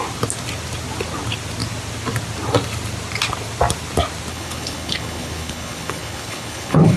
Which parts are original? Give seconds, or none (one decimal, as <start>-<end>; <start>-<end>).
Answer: 0.0-4.3

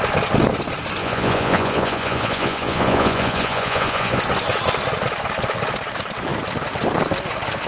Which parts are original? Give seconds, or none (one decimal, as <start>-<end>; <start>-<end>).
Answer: 0.0-1.0; 4.2-7.7

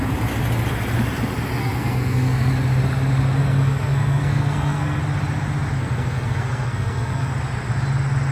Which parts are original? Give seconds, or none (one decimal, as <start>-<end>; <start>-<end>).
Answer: 0.0-1.6; 2.5-3.4; 5.0-5.8; 7.3-8.3

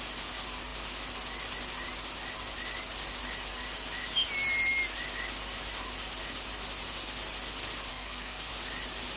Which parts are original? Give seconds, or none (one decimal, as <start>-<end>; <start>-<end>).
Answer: 0.0-7.9; 8.5-9.2

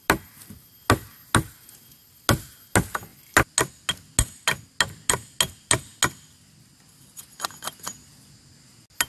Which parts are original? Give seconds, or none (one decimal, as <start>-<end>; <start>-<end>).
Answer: 0.0-9.1